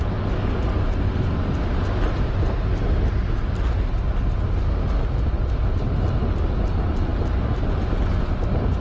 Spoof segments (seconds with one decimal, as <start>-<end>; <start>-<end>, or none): none